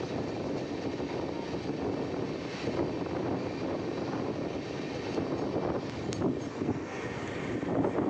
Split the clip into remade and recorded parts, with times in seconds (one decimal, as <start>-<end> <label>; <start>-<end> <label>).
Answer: 0.0-6.5 recorded; 6.5-7.2 remade; 7.2-8.1 recorded